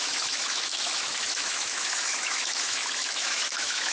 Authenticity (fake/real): fake